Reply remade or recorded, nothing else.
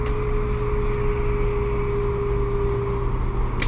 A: recorded